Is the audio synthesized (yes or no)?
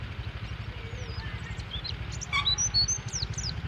no